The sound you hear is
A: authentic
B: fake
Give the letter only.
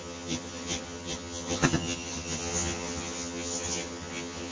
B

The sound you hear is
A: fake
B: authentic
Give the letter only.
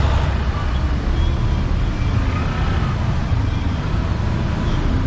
B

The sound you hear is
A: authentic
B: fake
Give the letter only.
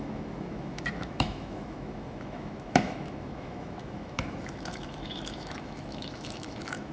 B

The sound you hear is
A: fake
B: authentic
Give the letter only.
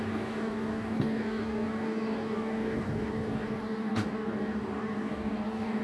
A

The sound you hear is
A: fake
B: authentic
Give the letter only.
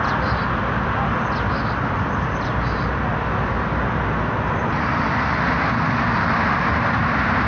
B